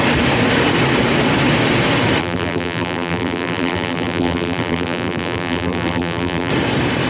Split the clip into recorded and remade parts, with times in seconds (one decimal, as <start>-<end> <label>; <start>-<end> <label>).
0.0-2.2 recorded; 2.2-6.5 remade; 6.5-7.1 recorded